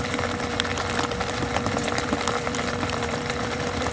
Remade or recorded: remade